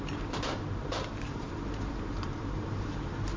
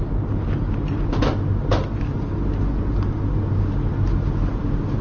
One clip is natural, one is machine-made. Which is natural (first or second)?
second